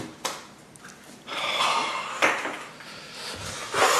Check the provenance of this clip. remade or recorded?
recorded